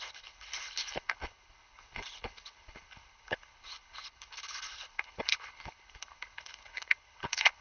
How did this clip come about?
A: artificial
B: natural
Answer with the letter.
A